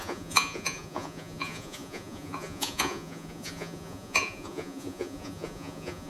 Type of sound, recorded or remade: remade